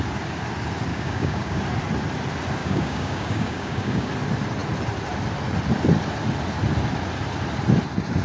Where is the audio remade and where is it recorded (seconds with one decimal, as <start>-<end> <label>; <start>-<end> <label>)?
0.0-0.9 recorded; 0.9-1.6 remade; 1.6-2.6 recorded; 2.6-4.1 remade; 4.1-8.2 recorded